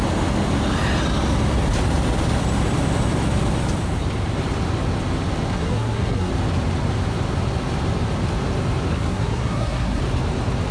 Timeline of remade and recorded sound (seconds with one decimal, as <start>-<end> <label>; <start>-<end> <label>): 0.0-5.5 recorded; 5.5-6.3 remade; 6.3-8.9 recorded; 8.9-10.0 remade; 10.0-10.7 recorded